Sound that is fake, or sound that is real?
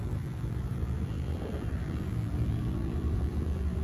fake